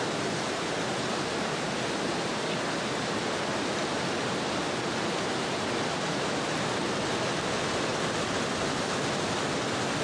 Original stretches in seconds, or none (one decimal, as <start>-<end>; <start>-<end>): 0.0-10.0